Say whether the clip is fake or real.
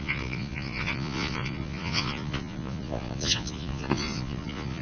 fake